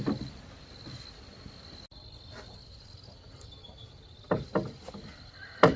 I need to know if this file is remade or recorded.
recorded